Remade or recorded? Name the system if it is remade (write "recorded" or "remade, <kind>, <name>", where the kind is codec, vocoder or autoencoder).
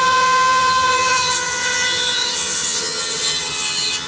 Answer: remade, vocoder, HiFi-GAN